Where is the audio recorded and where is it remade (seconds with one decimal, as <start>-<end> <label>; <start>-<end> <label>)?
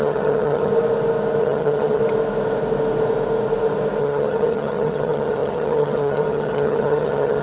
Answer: 0.0-0.7 remade; 0.7-1.4 recorded; 1.4-2.0 remade; 2.0-4.0 recorded; 4.0-7.4 remade